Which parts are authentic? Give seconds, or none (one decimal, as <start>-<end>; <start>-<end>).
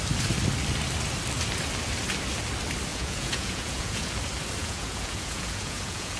0.0-2.9; 4.1-4.6